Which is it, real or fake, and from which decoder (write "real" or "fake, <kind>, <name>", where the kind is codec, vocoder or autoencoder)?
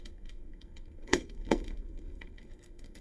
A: fake, codec, SNAC